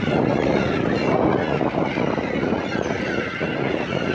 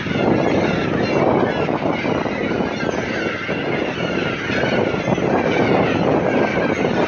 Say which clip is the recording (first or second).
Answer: second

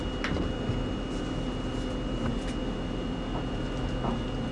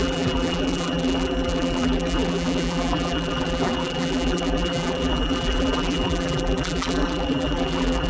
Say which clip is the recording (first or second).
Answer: first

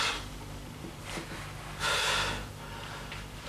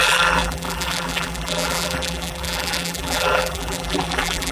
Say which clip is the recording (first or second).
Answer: first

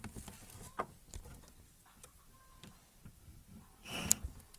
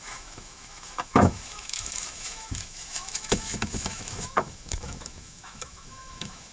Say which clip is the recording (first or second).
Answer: first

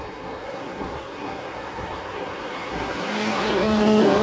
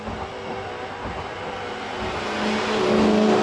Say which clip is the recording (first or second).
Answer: second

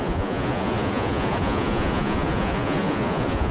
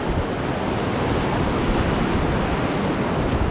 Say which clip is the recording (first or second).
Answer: second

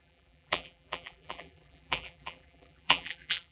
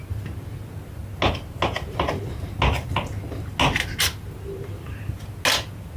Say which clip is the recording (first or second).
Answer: second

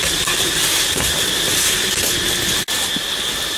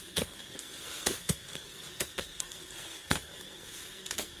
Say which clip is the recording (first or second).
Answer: first